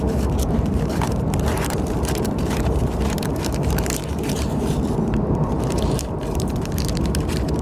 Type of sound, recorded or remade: remade